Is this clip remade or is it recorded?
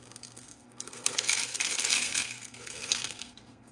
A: remade